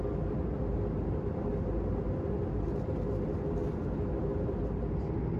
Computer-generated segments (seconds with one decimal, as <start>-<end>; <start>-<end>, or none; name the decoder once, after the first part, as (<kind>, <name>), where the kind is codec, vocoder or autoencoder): none